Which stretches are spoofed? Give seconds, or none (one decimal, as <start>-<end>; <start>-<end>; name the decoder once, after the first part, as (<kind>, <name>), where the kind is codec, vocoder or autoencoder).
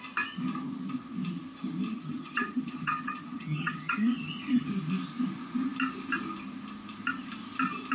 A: 1.9-4.7 (vocoder, HiFi-GAN)